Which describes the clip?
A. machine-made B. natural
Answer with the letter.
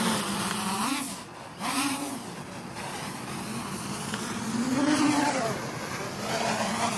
B